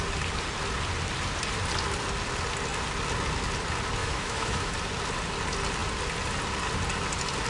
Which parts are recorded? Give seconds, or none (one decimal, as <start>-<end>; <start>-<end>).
0.0-4.0; 4.7-7.5